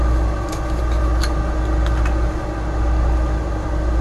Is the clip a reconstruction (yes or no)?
no